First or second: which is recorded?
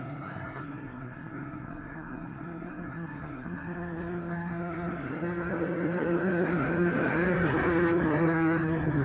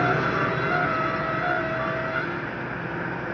second